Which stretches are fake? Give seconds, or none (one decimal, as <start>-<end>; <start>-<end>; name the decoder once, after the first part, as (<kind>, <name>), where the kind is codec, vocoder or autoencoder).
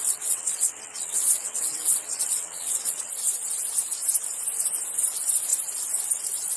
0.0-3.1 (vocoder, WaveNeXt)